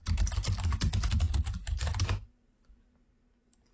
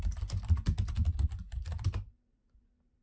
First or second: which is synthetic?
second